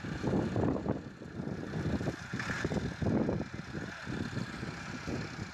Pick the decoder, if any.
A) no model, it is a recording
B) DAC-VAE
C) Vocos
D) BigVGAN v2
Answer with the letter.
A